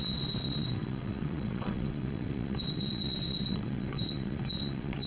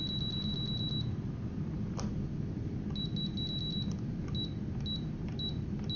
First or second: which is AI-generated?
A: first